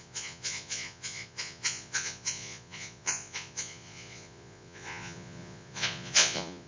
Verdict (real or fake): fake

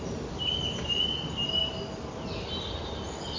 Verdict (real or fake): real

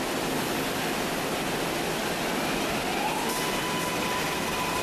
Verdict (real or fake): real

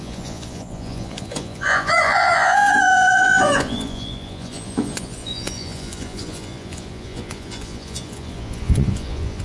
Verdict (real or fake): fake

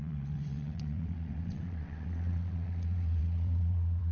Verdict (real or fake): fake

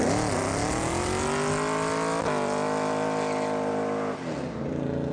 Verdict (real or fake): real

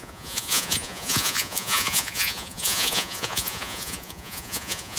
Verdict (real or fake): fake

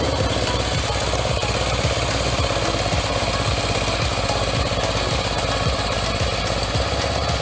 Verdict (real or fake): real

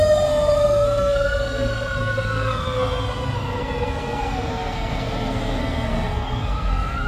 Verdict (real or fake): fake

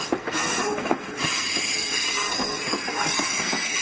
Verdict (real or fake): fake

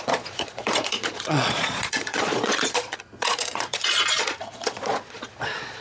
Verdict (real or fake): fake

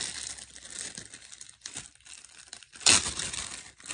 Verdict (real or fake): real